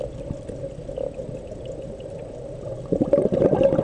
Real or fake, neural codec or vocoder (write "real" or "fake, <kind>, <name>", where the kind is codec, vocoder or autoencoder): real